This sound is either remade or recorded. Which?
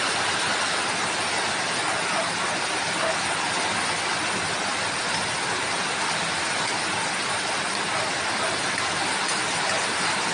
recorded